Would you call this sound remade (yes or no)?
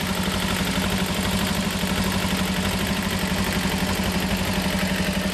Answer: no